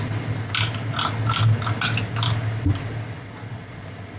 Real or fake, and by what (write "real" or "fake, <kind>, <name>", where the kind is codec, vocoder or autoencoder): real